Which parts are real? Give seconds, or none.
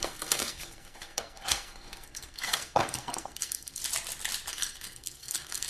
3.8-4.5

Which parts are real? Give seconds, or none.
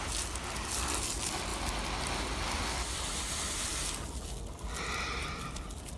0.0-6.0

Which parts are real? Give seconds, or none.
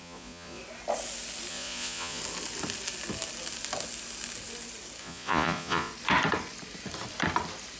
0.6-1.5; 2.2-5.0; 5.9-7.8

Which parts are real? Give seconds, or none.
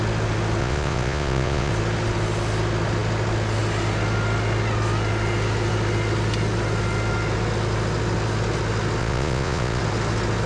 0.0-0.6; 1.7-9.0; 9.8-10.5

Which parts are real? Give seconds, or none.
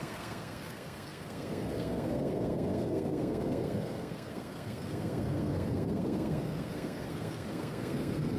none